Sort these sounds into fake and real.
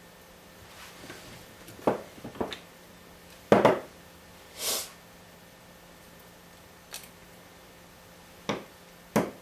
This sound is real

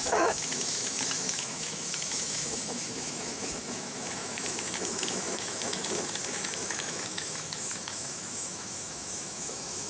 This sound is fake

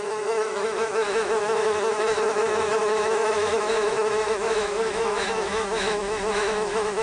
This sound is fake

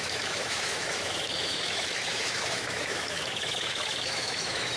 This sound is fake